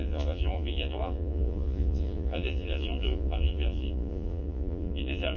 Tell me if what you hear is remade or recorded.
remade